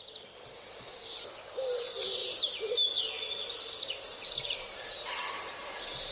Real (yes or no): yes